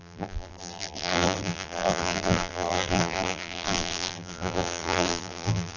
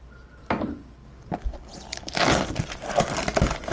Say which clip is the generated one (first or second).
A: first